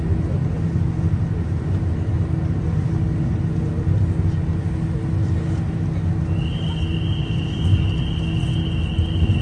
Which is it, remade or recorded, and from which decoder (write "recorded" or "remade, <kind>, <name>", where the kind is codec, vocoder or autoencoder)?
recorded